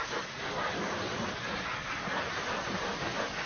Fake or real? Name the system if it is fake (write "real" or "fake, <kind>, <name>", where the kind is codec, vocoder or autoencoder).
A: real